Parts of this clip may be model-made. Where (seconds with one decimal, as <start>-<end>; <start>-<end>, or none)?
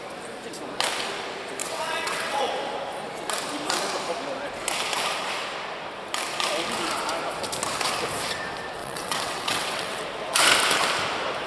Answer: 1.6-2.5; 8.8-10.0